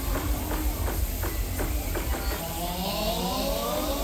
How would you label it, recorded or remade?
recorded